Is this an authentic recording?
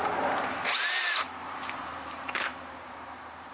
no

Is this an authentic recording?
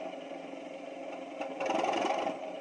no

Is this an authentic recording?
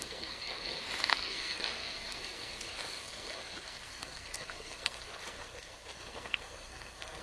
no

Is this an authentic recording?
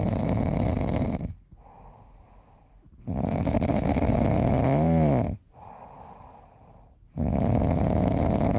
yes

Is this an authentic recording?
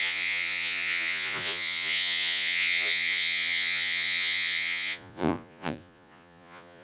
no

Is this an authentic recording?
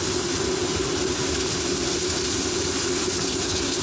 yes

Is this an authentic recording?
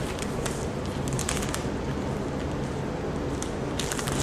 yes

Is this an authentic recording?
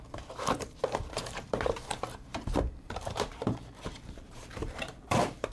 no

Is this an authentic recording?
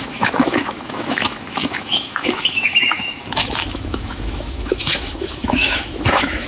no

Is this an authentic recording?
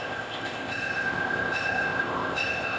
no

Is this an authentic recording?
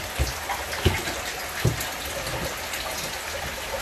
yes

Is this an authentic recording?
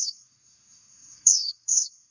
no